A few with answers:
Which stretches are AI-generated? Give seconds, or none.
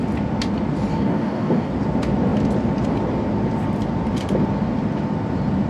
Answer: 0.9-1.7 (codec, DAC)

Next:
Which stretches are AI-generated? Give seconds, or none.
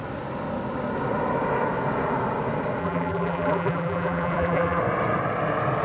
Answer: 2.8-4.8 (vocoder, BigVGAN v2)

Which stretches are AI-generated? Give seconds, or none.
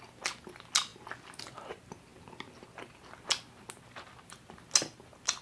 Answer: none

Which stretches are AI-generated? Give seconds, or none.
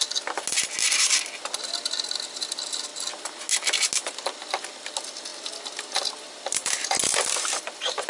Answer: none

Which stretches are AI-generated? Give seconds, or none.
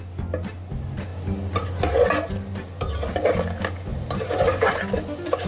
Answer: 3.9-4.8 (vocoder, BigVGAN v2)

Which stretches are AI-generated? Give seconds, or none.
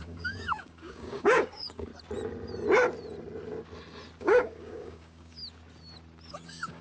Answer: 0.0-1.9 (codec, DAC); 4.2-5.4; 6.3-6.8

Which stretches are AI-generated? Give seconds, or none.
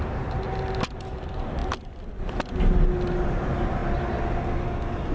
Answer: none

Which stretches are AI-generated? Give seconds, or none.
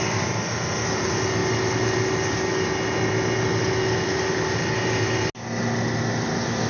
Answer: none